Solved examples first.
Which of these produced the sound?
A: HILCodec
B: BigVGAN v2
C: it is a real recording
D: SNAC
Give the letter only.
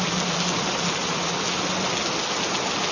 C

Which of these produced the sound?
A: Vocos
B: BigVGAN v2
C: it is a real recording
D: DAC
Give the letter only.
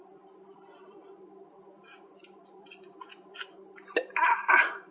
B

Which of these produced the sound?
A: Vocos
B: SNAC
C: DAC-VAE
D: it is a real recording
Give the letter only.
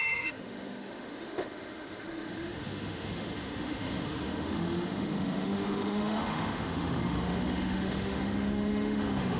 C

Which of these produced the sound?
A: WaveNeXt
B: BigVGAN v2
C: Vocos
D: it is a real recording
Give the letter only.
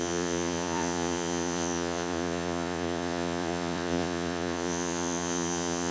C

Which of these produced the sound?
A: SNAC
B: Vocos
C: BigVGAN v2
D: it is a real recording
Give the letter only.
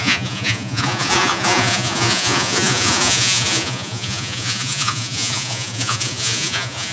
B